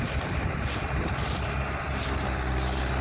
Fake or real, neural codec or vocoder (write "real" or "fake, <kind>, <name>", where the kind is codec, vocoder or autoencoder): real